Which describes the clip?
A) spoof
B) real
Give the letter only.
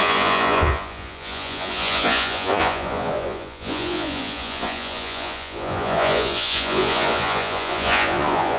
A